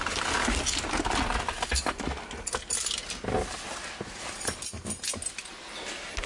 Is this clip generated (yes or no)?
no